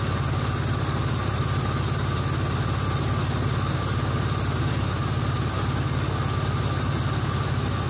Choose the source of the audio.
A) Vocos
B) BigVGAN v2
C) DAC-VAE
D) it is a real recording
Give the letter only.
D